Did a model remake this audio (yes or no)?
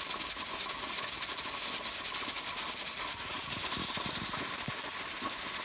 no